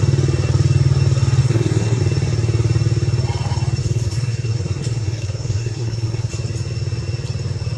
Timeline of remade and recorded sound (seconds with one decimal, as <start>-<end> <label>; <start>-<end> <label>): 0.0-1.4 recorded; 1.4-2.0 remade; 2.0-3.8 recorded; 3.8-6.3 remade; 6.3-7.8 recorded